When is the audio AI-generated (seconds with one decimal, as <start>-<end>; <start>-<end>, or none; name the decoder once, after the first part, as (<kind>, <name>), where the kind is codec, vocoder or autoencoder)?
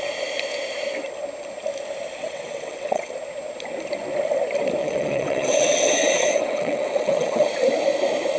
2.2-3.1 (vocoder, WaveNeXt); 4.8-7.5